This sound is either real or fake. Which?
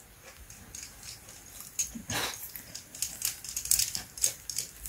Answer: real